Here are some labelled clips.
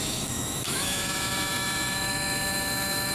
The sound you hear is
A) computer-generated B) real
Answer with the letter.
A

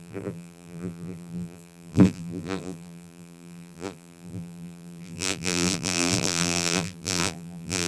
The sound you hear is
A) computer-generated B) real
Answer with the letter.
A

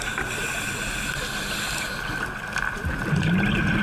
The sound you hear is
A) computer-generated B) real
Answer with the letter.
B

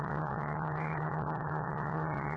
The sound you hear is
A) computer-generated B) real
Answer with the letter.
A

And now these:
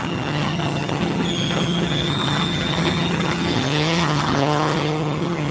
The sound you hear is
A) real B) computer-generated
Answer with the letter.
B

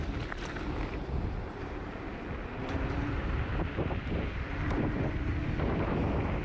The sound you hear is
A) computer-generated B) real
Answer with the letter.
A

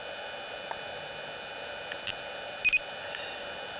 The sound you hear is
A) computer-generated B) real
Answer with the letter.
B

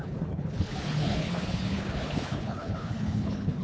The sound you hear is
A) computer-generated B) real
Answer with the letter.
A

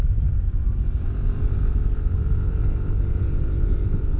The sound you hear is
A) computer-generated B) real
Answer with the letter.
A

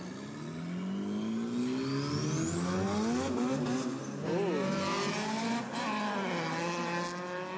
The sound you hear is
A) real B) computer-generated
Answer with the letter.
A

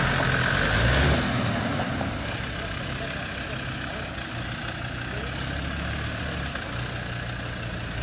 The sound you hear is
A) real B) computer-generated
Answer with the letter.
A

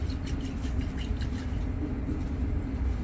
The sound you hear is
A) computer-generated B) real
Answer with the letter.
B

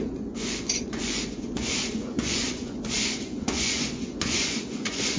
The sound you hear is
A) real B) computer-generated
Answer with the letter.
B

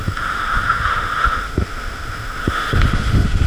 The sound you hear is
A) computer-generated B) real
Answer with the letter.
A